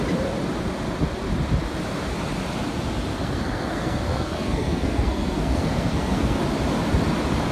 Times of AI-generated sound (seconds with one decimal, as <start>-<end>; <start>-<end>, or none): 3.1-6.4